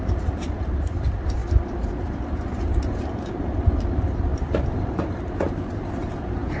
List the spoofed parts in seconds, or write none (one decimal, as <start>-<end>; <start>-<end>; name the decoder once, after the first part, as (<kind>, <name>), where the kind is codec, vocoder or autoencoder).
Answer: 4.3-5.2 (vocoder, BigVGAN v2); 6.0-6.6